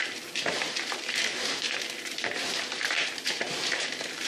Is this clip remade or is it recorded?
remade